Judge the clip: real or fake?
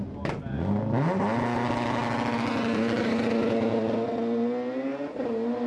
real